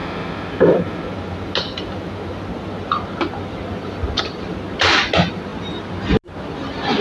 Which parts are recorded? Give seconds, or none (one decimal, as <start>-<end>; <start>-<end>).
0.0-7.0